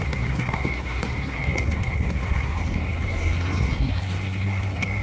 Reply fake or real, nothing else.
fake